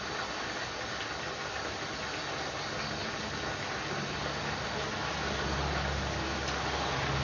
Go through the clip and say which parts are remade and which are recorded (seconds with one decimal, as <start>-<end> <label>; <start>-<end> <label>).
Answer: 0.0-7.2 recorded

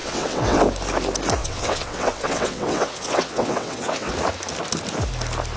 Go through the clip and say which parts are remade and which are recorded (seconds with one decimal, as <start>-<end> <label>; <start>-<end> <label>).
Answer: 0.0-0.6 remade; 0.6-1.4 recorded; 1.4-4.1 remade; 4.1-5.6 recorded

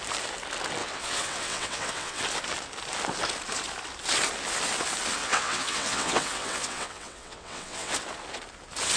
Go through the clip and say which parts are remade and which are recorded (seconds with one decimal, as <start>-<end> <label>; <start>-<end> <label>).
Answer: 0.0-0.8 recorded; 0.8-2.2 remade; 2.2-5.2 recorded; 5.2-7.9 remade; 7.9-9.0 recorded

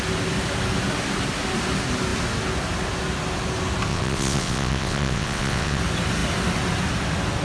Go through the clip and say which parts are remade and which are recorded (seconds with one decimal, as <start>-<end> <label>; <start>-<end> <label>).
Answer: 0.0-3.9 recorded; 3.9-5.8 remade; 5.8-7.4 recorded